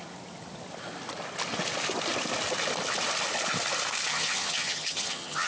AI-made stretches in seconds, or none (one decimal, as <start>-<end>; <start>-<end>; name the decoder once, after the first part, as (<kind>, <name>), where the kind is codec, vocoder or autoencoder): 4.1-5.5 (vocoder, HiFi-GAN)